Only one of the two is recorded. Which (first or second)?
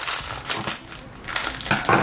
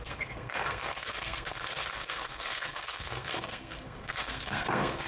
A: first